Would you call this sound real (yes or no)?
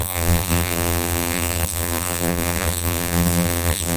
no